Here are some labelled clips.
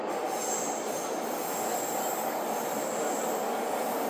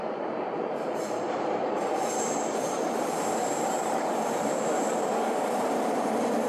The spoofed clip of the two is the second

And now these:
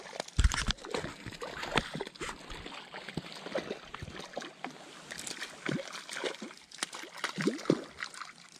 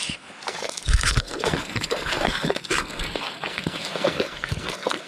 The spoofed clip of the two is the second